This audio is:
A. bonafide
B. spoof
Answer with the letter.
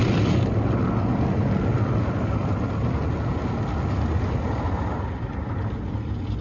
A